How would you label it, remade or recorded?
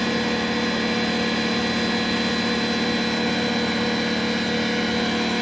recorded